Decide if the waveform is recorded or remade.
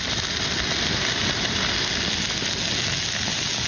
recorded